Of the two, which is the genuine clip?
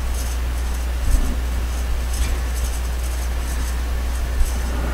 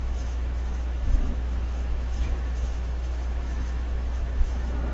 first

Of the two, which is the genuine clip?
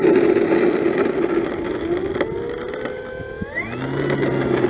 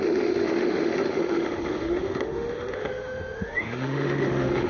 first